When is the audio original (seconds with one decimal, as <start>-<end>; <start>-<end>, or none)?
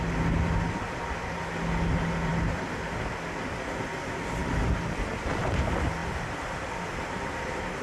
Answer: 0.0-7.8